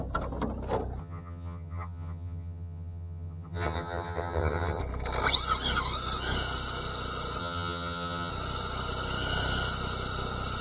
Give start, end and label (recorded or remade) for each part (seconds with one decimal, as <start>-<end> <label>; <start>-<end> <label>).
0.0-1.0 recorded; 1.0-4.8 remade; 4.8-7.4 recorded; 7.4-8.3 remade; 8.3-10.6 recorded